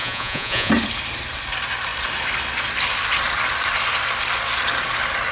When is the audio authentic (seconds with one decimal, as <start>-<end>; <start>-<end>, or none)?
0.7-5.3